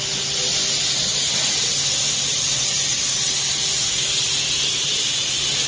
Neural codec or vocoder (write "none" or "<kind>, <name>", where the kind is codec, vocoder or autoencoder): none